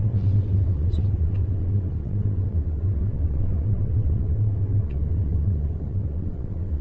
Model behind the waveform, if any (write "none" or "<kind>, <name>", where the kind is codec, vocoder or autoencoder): vocoder, WaveNeXt